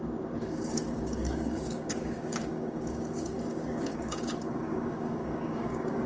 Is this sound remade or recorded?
remade